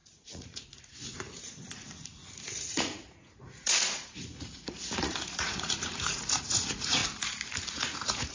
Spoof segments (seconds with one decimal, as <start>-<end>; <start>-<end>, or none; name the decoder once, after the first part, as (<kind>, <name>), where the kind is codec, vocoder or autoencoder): 0.0-7.0 (vocoder, Vocos); 7.7-8.3